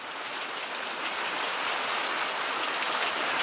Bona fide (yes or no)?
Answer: yes